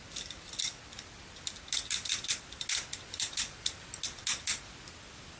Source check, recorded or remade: recorded